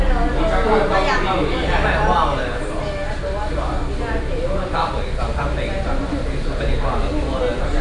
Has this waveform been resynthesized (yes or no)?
no